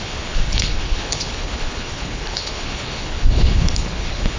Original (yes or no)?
no